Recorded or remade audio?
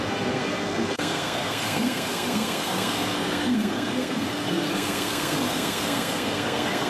remade